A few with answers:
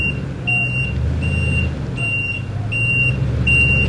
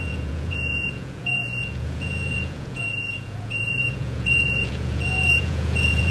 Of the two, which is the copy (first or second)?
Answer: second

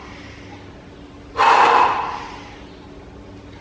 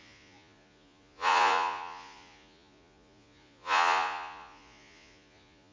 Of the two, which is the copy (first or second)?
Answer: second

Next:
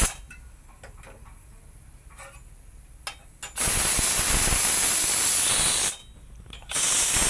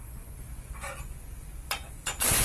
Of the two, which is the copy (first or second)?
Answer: second